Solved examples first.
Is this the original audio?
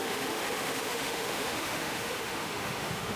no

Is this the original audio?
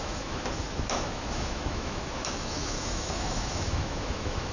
no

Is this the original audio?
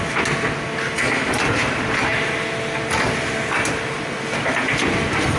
yes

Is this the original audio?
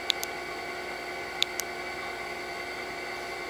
yes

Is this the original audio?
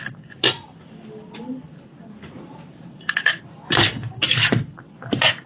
yes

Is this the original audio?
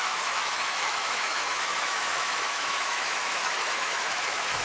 no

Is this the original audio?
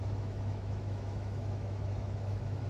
no